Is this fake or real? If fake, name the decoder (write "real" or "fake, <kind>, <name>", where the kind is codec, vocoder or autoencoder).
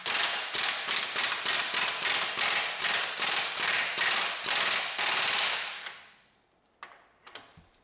real